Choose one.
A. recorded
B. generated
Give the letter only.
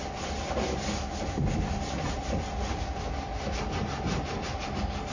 A